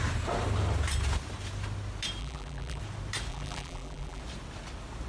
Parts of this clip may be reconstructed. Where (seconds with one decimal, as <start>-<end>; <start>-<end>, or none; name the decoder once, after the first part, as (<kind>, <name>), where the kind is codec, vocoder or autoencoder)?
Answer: 2.2-2.8 (vocoder, BigVGAN v2); 3.3-4.2